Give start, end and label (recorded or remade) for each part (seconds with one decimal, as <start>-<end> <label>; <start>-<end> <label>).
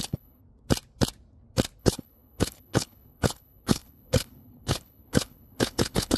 0.0-0.4 remade; 0.4-1.8 recorded; 1.8-6.2 remade